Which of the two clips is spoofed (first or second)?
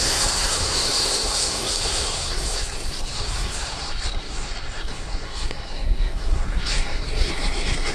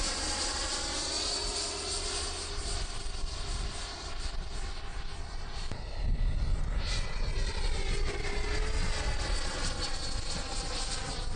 first